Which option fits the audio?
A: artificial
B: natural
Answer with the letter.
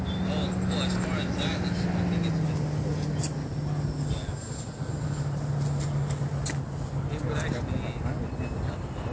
B